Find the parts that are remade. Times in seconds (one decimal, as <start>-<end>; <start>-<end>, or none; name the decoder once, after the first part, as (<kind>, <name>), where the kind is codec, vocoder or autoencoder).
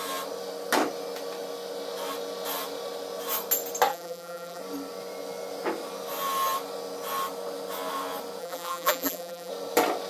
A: 3.9-4.6 (vocoder, BigVGAN v2); 8.4-9.5